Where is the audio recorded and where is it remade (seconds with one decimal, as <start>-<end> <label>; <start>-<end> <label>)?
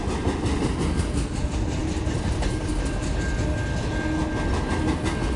0.0-1.8 recorded; 1.8-2.9 remade; 2.9-5.4 recorded